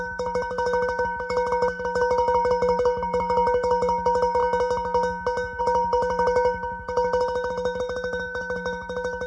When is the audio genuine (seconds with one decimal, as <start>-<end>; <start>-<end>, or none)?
4.4-5.6